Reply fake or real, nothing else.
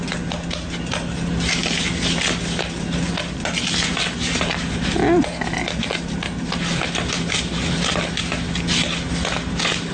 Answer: real